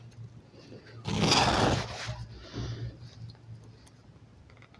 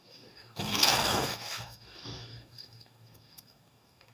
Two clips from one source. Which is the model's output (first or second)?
second